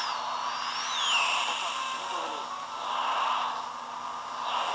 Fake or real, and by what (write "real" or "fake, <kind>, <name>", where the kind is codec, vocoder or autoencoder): real